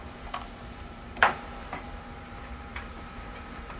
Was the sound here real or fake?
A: fake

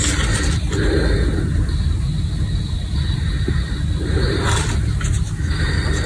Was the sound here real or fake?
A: real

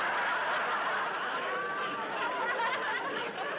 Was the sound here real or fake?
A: real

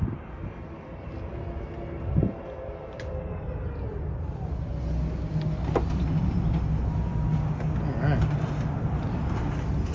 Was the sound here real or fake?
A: real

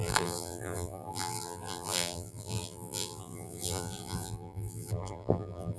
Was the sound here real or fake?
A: fake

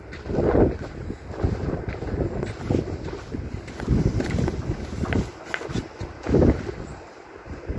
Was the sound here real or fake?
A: real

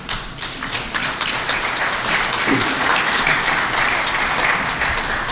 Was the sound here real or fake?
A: fake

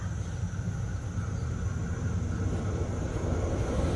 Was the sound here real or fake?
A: real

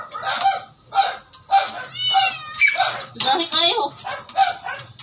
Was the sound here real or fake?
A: real